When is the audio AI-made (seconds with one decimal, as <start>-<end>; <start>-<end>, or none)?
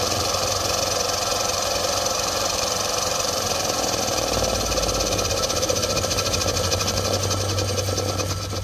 1.3-4.0